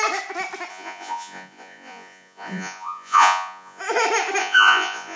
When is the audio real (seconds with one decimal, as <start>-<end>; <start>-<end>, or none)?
0.0-0.7; 3.8-4.4